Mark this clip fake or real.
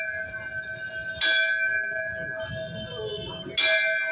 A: real